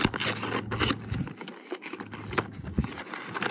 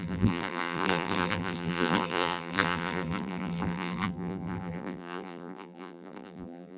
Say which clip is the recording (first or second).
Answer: first